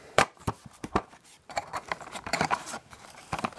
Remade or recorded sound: remade